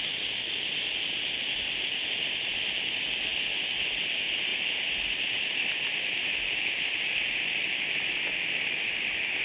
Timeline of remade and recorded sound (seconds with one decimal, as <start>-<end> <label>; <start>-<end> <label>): 0.0-4.5 recorded; 4.5-8.9 remade; 8.9-9.4 recorded